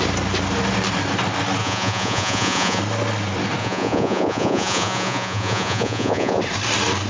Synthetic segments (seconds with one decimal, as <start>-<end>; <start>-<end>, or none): 1.6-2.8; 3.6-6.4

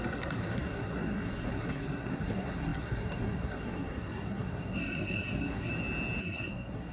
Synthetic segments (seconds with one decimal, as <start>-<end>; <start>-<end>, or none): 0.0-5.7; 6.2-6.9

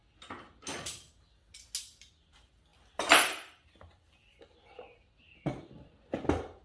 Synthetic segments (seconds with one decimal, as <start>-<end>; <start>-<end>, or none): 2.1-6.6

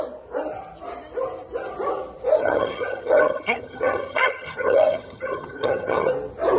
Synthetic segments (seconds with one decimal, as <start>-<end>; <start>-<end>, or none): 2.4-6.1

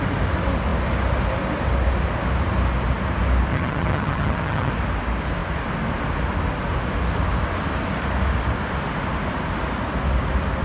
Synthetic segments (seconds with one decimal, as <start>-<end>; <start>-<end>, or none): 3.5-4.7

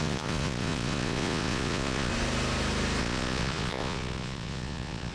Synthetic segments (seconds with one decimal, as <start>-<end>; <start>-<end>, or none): 0.0-2.1; 3.0-5.1